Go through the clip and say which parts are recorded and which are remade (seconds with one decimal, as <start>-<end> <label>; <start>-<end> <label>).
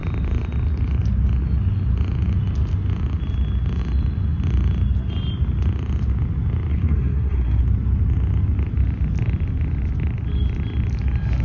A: 0.0-6.7 recorded; 6.7-7.6 remade; 7.6-11.4 recorded